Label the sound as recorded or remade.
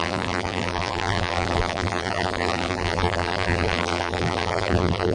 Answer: remade